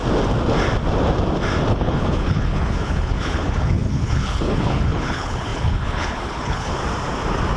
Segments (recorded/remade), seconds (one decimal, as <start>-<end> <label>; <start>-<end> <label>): 0.0-1.7 recorded; 1.7-6.8 remade; 6.8-7.6 recorded